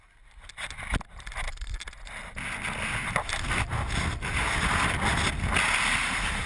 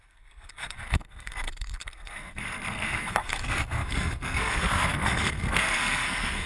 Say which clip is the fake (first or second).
second